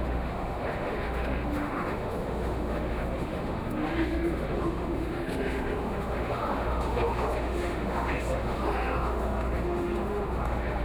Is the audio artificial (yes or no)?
yes